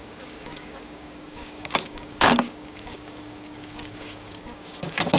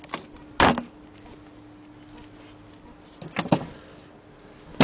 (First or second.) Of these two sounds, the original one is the second